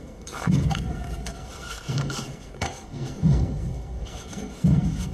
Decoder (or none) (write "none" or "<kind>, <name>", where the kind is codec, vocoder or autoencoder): codec, SNAC